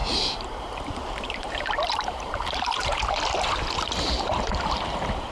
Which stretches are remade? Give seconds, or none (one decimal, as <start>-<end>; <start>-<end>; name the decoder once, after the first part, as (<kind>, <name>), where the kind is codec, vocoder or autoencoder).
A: 0.0-3.0 (vocoder, BigVGAN v2); 4.3-5.3